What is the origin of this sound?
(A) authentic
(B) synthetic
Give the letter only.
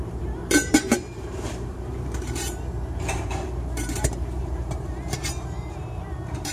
B